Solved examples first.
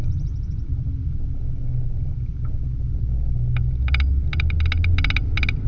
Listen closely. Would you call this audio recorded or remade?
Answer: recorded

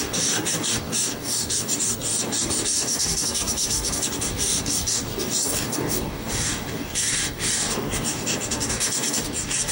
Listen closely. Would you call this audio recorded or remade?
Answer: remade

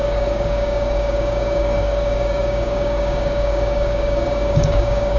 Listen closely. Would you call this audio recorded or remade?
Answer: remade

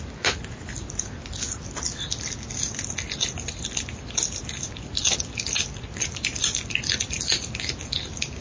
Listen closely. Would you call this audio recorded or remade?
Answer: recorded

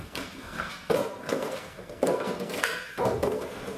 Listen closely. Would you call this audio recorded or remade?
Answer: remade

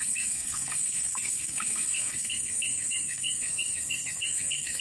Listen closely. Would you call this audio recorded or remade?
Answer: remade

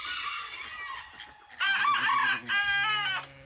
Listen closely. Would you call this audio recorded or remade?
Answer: recorded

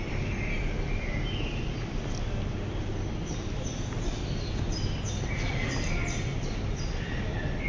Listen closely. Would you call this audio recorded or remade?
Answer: recorded